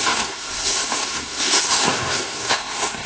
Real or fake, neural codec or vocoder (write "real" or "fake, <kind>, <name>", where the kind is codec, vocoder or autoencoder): fake, codec, SNAC